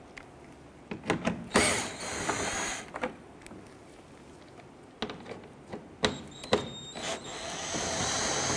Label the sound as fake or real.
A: real